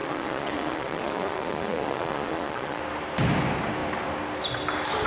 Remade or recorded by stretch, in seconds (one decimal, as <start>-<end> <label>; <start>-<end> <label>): 0.0-2.8 remade; 2.8-5.1 recorded